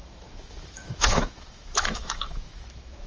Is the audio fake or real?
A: fake